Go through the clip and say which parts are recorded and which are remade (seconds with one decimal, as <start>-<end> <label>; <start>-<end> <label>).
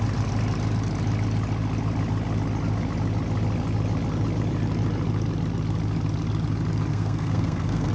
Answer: 0.0-6.9 recorded; 6.9-7.9 remade